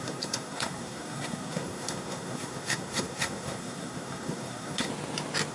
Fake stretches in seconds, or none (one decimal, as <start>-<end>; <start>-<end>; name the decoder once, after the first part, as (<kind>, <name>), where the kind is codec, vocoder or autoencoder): 0.0-4.9 (codec, SNAC)